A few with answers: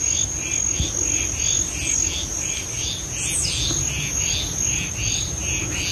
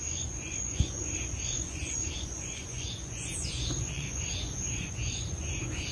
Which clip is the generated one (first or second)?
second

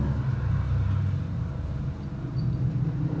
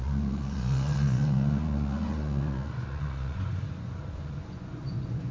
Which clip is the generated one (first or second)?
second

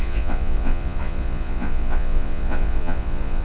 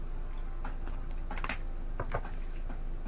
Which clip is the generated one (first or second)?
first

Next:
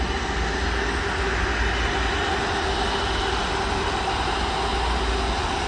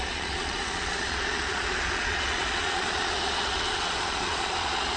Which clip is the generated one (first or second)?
second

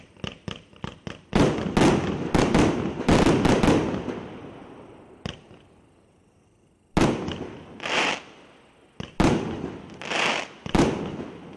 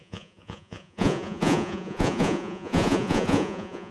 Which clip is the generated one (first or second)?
second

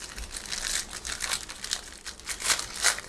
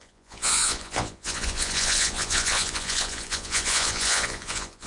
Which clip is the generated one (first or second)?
second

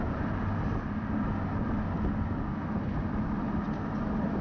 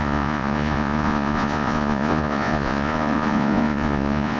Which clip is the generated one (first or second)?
second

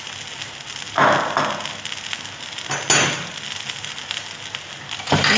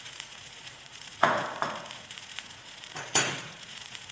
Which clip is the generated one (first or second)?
second